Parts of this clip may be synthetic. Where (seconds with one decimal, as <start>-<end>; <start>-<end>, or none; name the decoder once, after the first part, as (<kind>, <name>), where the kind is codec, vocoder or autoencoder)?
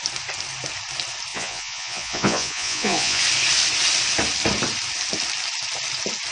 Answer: 1.3-3.2 (vocoder, Vocos)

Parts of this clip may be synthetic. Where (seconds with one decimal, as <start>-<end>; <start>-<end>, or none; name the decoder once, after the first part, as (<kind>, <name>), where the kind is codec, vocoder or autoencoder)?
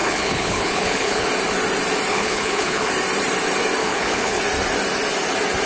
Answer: 0.0-1.3 (codec, HILCodec); 2.1-2.9; 3.8-4.4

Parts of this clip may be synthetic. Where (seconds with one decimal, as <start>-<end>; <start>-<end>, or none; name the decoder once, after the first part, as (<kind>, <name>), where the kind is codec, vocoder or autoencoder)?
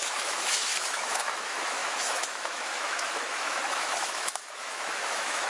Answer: 0.0-5.5 (autoencoder, DAC-VAE)